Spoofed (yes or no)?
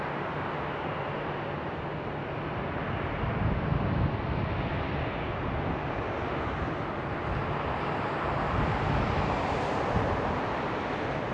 no